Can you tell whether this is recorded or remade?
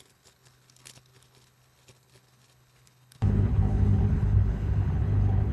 remade